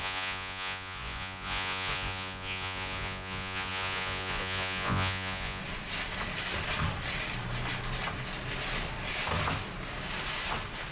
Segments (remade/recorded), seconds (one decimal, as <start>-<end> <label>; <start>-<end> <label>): 0.0-5.6 remade; 5.6-10.9 recorded